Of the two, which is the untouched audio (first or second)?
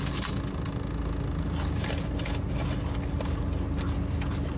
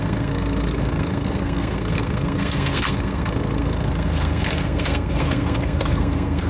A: first